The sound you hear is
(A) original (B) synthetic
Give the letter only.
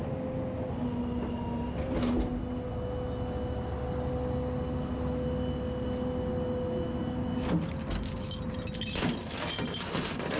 A